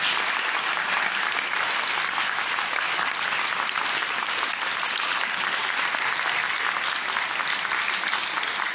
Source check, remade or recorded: recorded